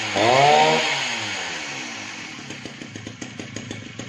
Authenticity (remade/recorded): recorded